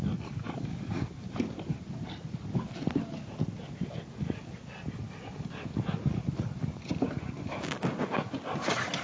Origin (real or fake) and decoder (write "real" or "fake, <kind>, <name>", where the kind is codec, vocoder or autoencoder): real